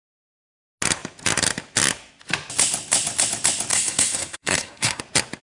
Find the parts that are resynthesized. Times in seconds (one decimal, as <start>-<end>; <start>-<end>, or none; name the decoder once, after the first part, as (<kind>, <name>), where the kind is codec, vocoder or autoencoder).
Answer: 3.7-5.0 (codec, SNAC)